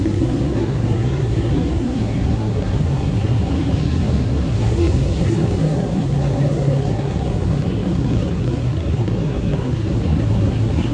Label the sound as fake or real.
fake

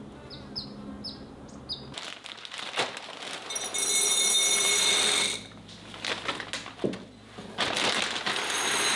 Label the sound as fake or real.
real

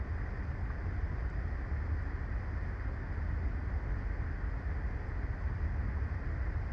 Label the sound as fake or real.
real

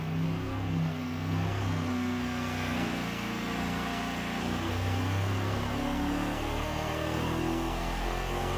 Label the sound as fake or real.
fake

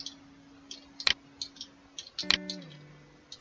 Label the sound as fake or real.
real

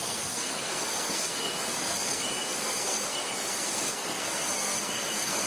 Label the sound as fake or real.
fake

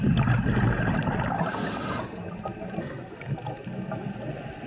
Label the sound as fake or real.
real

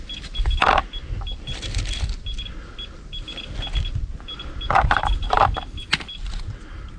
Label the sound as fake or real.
real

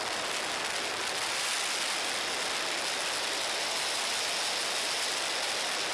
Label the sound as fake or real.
real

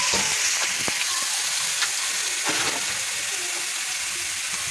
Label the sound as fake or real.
real